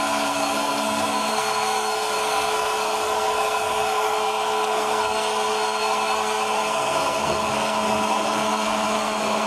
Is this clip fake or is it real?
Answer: fake